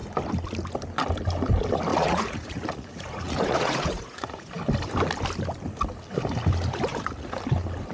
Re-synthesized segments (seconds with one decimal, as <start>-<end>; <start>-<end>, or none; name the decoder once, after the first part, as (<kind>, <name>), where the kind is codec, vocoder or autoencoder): 1.9-4.5 (vocoder, Vocos); 6.9-7.4

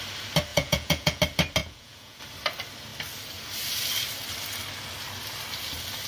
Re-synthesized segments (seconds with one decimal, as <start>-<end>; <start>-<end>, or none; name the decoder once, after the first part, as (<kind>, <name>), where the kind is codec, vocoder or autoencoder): 0.5-1.2 (vocoder, Vocos); 1.6-2.2

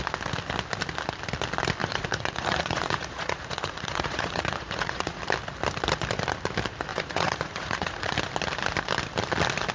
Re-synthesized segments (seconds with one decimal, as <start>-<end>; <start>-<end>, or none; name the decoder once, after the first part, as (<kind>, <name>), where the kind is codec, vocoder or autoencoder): 1.8-5.2 (vocoder, Vocos); 6.9-8.1